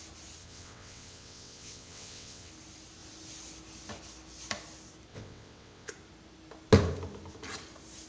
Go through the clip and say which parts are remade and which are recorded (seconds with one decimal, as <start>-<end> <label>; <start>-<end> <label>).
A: 0.0-0.4 recorded; 0.4-2.5 remade; 2.5-5.1 recorded; 5.1-5.9 remade; 5.9-8.1 recorded